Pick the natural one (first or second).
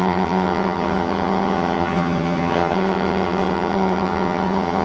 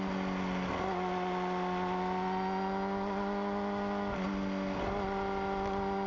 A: second